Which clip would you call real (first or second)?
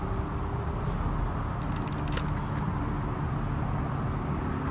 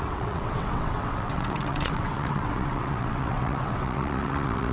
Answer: first